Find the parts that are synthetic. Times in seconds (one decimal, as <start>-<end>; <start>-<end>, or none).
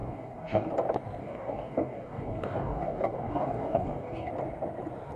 0.0-0.7; 1.2-4.3